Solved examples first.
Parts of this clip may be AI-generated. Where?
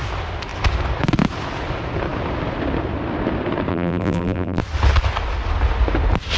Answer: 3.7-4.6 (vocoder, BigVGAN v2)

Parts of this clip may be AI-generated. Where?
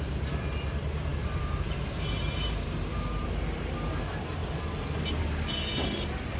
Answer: 0.0-4.4 (vocoder, BigVGAN v2)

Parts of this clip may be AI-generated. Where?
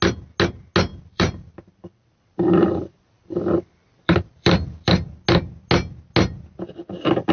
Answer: 0.9-4.9 (vocoder, BigVGAN v2)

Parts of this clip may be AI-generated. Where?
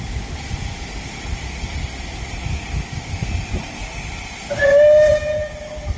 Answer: none